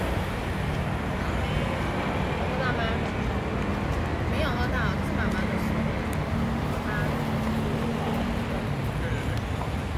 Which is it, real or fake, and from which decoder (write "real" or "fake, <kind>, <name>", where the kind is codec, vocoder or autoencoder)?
real